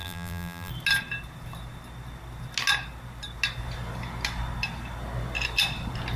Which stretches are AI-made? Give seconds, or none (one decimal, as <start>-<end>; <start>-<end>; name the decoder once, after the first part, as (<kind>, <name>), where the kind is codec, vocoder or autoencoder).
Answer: 0.0-0.7 (vocoder, BigVGAN v2)